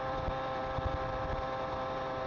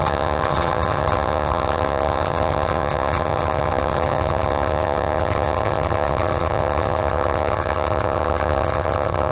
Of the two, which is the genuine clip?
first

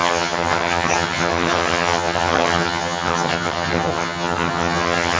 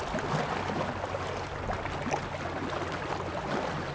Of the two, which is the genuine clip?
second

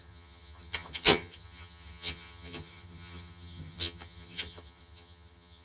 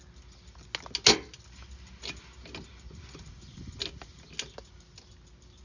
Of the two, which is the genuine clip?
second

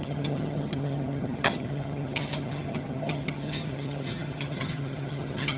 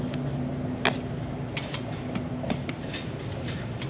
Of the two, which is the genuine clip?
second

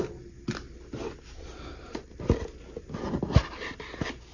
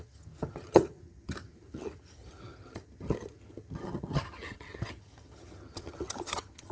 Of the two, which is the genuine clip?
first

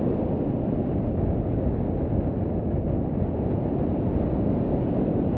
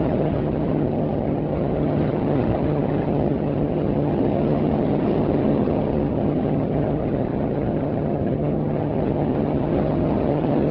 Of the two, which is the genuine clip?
first